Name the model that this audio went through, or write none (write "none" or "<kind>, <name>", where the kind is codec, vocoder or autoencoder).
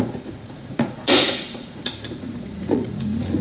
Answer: vocoder, Vocos